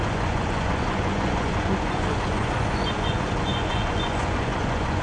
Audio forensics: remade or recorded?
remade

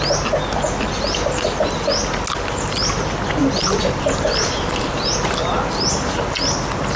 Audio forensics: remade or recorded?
recorded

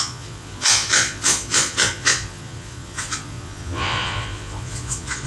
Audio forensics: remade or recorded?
remade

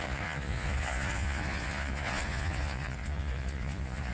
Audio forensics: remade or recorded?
remade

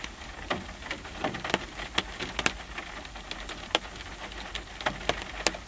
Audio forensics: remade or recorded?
recorded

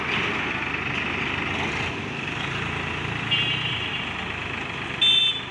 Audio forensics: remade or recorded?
recorded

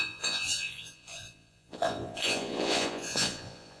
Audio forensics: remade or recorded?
remade